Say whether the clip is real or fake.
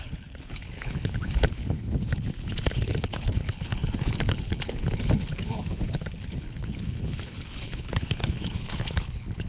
fake